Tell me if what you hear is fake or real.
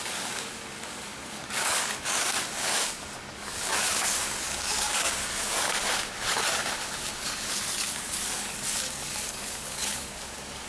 fake